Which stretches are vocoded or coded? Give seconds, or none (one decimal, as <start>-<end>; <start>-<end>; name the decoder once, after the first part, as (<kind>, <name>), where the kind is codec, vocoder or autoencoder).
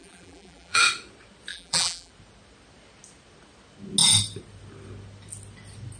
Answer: 0.0-0.8 (vocoder, BigVGAN v2); 1.5-2.1